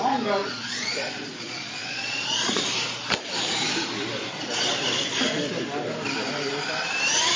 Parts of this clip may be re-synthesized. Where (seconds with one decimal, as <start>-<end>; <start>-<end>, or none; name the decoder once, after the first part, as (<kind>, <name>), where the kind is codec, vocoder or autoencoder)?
0.4-2.6 (vocoder, Vocos)

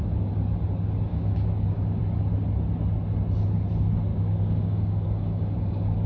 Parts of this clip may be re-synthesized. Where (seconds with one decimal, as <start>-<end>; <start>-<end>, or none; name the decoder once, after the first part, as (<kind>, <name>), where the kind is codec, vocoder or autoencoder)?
1.1-2.0 (codec, DAC); 4.1-6.1

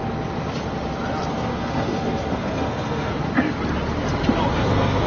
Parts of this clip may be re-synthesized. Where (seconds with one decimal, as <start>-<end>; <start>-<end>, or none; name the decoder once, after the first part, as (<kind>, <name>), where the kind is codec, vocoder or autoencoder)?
1.3-3.1 (codec, SNAC); 4.5-5.1